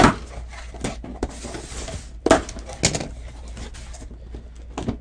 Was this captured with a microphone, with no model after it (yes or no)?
yes